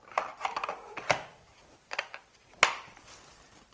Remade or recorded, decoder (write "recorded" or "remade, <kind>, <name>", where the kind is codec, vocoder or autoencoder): recorded